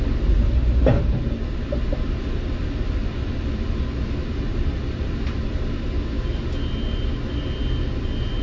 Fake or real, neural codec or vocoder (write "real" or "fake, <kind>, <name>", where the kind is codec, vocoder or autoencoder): real